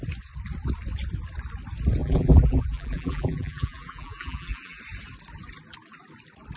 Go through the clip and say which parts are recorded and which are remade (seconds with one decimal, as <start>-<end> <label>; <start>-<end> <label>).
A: 0.0-2.0 recorded; 2.0-4.8 remade; 4.8-6.6 recorded